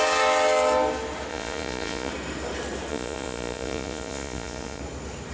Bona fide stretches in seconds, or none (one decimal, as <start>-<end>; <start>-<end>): 0.0-1.3; 2.1-2.9; 4.8-5.3